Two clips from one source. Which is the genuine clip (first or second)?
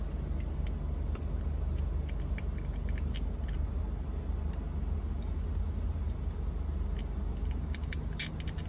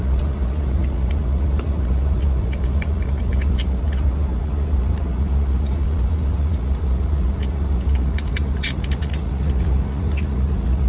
first